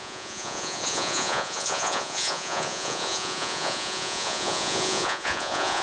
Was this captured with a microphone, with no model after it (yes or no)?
no